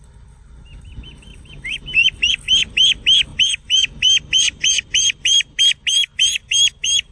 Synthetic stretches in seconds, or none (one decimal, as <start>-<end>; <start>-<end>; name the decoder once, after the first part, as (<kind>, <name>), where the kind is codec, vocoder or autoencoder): 1.3-2.3 (vocoder, BigVGAN v2); 3.3-5.6